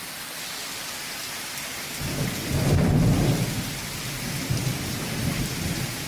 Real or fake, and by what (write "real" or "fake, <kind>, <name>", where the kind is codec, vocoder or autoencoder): real